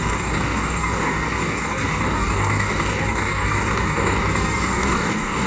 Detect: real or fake fake